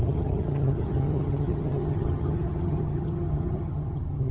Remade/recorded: remade